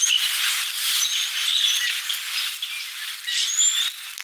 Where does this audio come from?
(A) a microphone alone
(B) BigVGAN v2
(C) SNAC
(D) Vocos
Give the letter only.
A